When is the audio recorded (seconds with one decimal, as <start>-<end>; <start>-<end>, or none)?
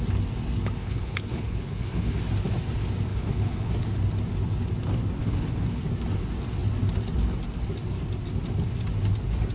0.0-0.8; 2.2-3.1; 3.7-5.2; 5.8-9.5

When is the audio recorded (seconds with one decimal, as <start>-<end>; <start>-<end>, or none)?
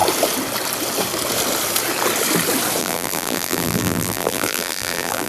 0.0-2.8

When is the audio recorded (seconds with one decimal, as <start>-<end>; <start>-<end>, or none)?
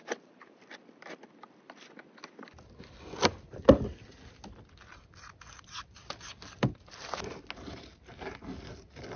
0.7-9.2